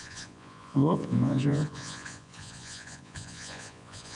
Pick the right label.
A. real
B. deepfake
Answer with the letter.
B